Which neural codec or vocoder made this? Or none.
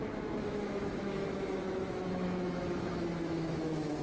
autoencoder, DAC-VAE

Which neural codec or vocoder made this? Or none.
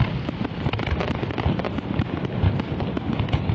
none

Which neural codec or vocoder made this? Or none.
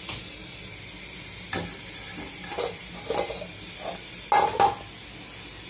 none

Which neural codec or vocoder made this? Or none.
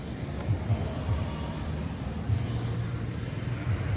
none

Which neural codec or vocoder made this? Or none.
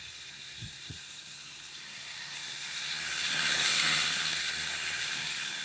codec, SNAC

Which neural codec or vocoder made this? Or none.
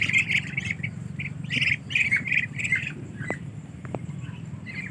none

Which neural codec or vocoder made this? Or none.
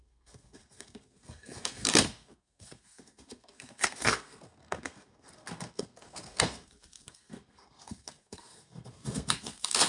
codec, SNAC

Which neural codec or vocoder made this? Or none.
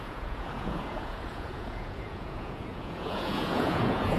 vocoder, Vocos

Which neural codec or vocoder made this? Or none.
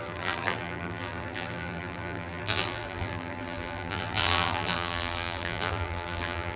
vocoder, BigVGAN v2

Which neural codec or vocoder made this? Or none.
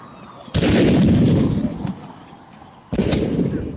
none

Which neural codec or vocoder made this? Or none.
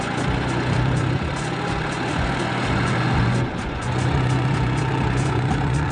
vocoder, Vocos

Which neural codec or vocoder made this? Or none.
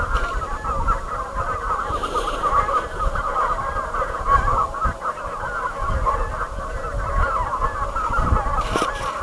none